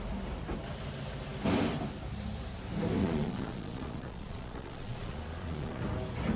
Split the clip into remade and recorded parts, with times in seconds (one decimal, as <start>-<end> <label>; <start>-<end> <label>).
0.0-3.0 recorded; 3.0-5.8 remade; 5.8-6.4 recorded